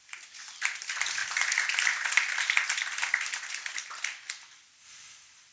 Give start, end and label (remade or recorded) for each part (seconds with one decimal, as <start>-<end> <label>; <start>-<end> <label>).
0.0-5.5 recorded